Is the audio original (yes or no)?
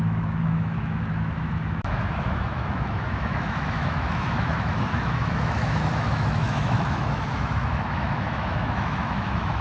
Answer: no